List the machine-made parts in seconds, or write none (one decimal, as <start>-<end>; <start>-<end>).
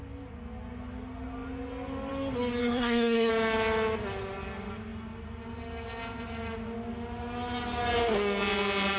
2.6-3.3